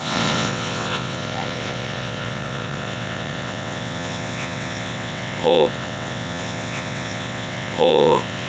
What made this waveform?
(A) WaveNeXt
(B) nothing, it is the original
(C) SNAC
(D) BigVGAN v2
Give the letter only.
A